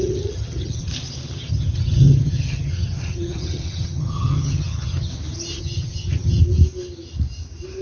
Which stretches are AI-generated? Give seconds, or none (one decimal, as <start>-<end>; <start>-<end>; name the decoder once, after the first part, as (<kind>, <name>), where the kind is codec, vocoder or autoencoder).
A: 0.0-0.9 (vocoder, HiFi-GAN); 1.5-5.1; 5.6-6.4